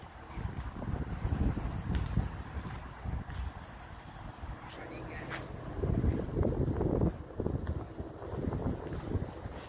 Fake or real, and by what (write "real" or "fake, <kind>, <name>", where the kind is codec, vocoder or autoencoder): real